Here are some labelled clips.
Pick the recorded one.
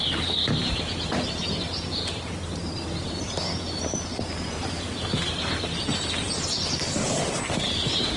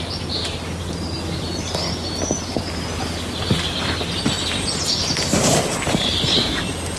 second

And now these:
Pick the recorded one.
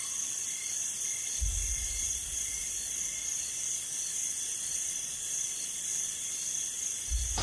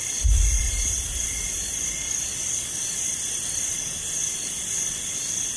second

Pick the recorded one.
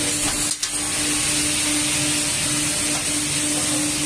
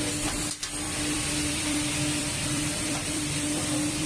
first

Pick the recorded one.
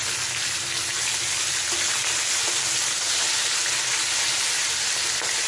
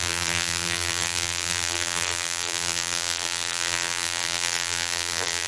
first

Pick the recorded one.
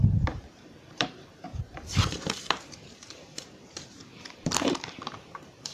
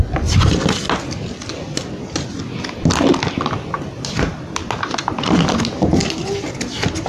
second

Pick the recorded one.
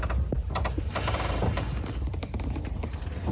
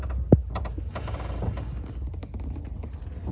second